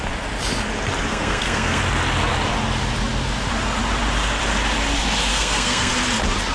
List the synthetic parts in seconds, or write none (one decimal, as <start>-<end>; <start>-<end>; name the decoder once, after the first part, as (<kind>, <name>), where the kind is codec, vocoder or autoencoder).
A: 1.1-1.8 (codec, SNAC); 5.3-5.9

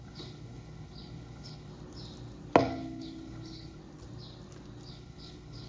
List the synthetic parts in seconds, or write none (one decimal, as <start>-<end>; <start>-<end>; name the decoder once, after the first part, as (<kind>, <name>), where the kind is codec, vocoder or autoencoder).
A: 0.0-1.7 (codec, HILCodec); 2.6-3.8; 4.9-5.7

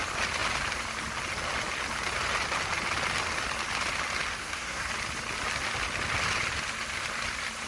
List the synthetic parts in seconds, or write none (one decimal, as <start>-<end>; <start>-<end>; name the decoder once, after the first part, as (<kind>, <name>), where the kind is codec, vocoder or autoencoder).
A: 4.4-4.9 (codec, SNAC)

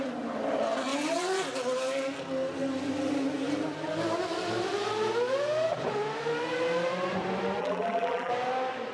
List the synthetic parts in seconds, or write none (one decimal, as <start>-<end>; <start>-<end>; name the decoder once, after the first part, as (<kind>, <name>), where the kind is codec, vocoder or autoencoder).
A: 7.6-8.3 (vocoder, BigVGAN v2)

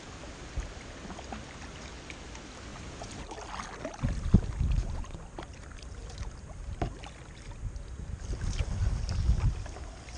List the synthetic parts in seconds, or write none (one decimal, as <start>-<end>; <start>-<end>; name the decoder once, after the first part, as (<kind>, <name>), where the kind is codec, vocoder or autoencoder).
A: none

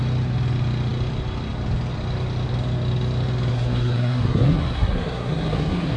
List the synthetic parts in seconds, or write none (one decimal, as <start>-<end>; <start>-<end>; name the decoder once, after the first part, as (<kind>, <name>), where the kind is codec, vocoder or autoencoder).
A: 3.5-6.0 (codec, SNAC)